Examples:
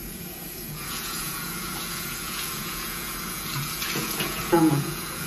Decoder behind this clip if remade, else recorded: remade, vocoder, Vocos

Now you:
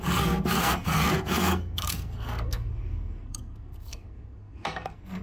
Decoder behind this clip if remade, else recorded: remade, codec, SNAC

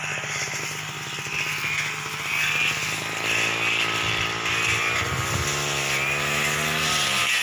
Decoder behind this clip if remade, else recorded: recorded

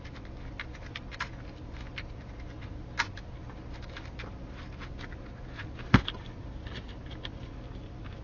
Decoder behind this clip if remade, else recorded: recorded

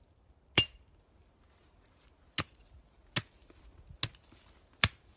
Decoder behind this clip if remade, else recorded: recorded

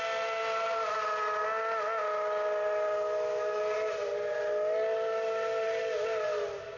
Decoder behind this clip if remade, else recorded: recorded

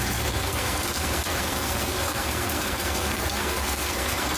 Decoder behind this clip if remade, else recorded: remade, codec, SNAC